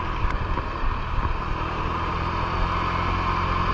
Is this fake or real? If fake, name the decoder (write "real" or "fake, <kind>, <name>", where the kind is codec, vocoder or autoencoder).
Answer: real